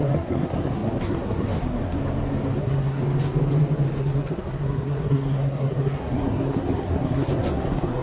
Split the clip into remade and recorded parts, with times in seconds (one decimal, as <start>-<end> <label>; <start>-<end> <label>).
0.0-2.0 remade; 2.0-2.6 recorded; 2.6-3.0 remade; 3.0-4.0 recorded; 4.0-8.0 remade

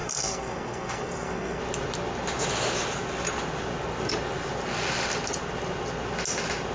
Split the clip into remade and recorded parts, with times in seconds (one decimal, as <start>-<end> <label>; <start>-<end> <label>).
0.0-1.6 remade; 1.6-6.7 recorded

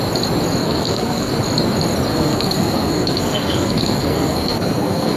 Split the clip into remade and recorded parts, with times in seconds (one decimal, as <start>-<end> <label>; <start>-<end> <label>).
0.0-0.6 recorded; 0.6-1.3 remade; 1.3-2.1 recorded; 2.1-5.2 remade

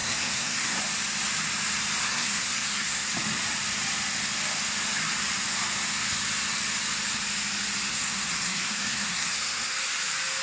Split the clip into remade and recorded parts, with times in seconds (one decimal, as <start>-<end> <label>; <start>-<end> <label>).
0.0-0.8 remade; 0.8-2.0 recorded; 2.0-3.1 remade; 3.1-7.9 recorded; 7.9-9.7 remade; 9.7-10.4 recorded

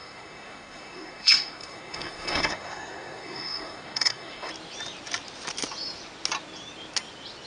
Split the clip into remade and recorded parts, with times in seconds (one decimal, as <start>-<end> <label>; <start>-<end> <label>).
0.0-4.5 remade; 4.5-7.5 recorded

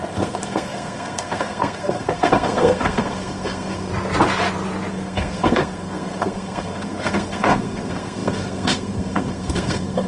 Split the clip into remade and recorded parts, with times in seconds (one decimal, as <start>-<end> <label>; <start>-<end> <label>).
0.0-3.9 remade; 3.9-4.9 recorded; 4.9-10.1 remade